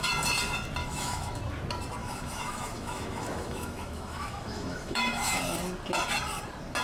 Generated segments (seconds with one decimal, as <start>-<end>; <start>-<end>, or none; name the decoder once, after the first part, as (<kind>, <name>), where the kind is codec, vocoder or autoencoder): 0.8-1.4 (autoencoder, DAC-VAE); 2.0-5.4